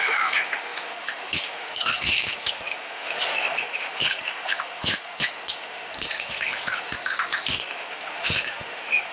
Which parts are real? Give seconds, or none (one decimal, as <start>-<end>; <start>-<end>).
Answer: none